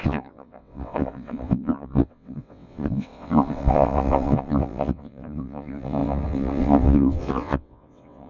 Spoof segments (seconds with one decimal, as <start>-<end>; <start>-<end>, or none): 0.0-8.3